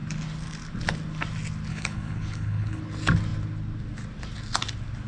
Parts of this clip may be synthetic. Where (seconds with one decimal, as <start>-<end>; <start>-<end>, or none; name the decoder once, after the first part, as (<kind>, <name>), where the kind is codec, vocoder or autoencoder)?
1.7-2.8 (codec, HILCodec)

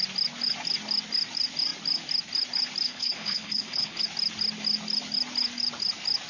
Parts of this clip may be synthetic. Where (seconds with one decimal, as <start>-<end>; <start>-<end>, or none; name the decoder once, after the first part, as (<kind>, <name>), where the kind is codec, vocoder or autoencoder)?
2.9-4.0 (codec, HILCodec)